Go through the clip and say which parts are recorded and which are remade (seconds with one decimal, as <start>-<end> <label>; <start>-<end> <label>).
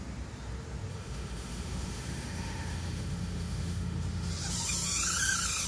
0.0-0.9 recorded; 0.9-4.3 remade; 4.3-5.7 recorded